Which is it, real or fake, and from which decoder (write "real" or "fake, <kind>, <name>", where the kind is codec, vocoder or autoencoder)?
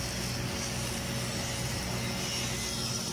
real